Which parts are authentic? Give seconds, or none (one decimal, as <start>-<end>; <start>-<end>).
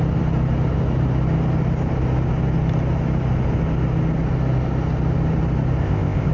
0.0-5.8